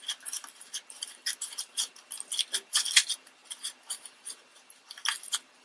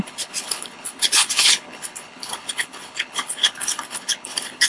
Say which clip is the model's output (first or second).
second